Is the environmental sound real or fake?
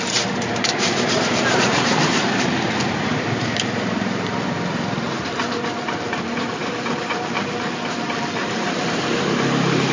fake